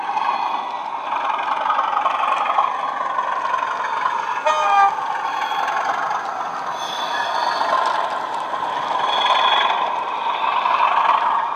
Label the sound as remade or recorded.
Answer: recorded